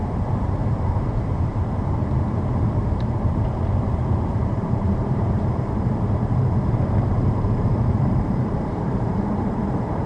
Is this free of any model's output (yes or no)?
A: no